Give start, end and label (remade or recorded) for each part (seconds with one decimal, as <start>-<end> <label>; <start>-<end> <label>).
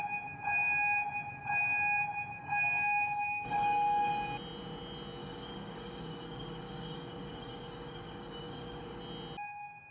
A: 0.0-2.4 recorded; 2.4-4.1 remade; 4.1-5.2 recorded; 5.2-9.0 remade; 9.0-9.9 recorded